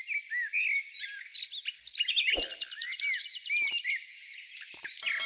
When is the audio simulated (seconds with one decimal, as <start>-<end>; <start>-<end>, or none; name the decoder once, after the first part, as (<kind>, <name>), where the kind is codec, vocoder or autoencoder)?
none